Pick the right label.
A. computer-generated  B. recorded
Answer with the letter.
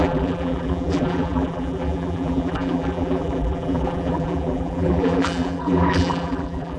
A